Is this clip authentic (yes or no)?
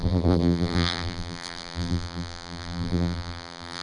no